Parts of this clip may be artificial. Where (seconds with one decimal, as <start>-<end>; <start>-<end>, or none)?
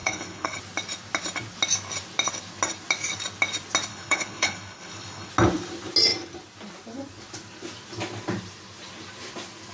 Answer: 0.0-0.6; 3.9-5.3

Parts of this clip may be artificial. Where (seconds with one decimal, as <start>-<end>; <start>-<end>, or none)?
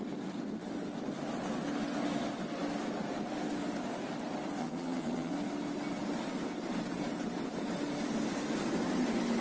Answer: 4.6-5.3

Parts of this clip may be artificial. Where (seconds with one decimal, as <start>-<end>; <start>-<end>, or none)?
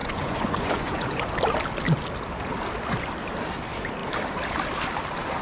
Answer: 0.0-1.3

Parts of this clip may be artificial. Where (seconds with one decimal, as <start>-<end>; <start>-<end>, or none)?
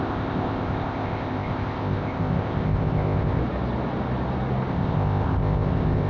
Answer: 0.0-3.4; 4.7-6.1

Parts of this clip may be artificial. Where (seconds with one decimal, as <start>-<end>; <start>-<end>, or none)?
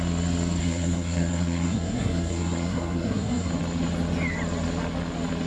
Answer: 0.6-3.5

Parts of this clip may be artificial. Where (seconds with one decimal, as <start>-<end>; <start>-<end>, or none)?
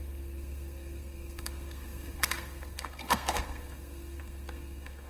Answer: 0.0-5.1